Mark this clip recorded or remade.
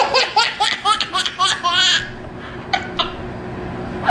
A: recorded